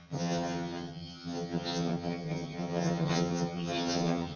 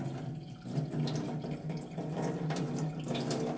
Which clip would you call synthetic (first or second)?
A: first